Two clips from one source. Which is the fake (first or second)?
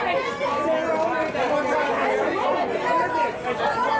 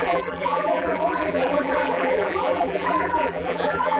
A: second